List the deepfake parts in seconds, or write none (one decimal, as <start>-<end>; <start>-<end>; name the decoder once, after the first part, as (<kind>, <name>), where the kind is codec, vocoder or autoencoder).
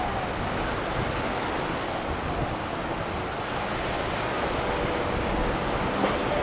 none